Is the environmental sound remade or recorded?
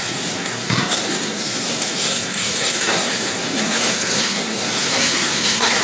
remade